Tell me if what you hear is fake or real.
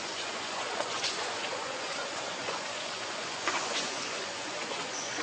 fake